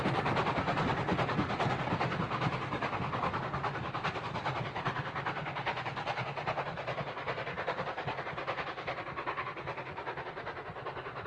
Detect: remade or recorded recorded